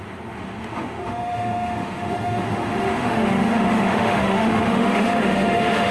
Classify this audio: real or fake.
fake